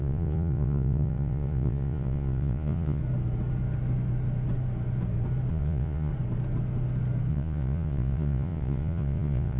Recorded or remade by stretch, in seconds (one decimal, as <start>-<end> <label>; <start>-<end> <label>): 0.0-3.0 remade; 3.0-5.5 recorded; 5.5-6.1 remade; 6.1-7.3 recorded; 7.3-9.6 remade